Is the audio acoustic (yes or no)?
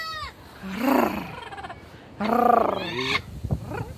yes